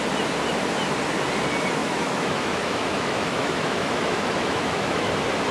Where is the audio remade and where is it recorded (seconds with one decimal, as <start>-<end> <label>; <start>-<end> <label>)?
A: 0.0-1.8 recorded; 1.8-5.1 remade; 5.1-5.5 recorded